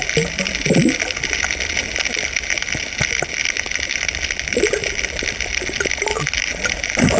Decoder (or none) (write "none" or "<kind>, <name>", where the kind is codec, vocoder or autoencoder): none